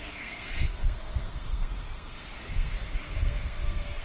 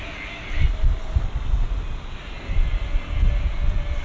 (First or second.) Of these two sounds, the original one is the second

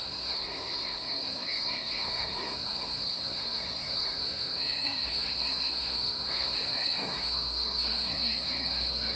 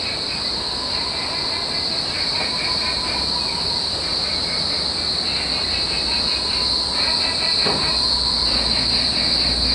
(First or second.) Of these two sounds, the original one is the second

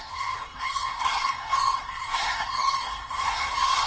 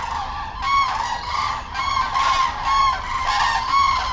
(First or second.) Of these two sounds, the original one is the second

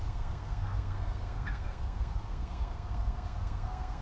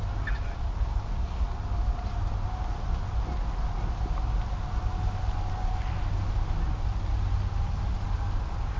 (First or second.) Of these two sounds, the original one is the second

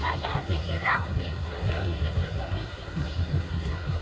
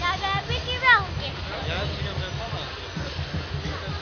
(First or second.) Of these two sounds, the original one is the second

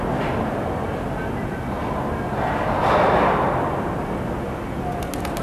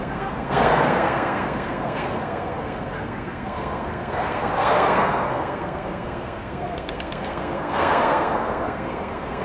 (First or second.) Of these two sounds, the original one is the first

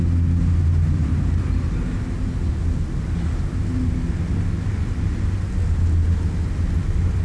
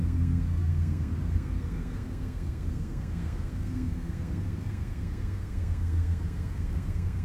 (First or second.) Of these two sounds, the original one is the first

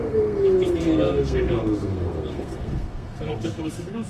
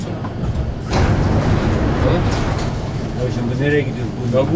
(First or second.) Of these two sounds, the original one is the second